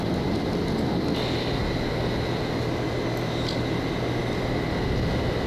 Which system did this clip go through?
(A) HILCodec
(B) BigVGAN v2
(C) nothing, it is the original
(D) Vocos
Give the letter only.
C